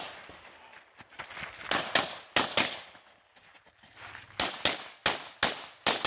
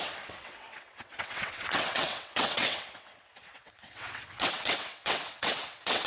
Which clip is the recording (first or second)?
first